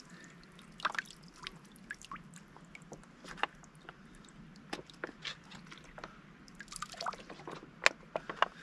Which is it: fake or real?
real